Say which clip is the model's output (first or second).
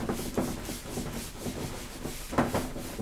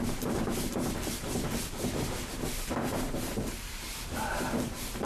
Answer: second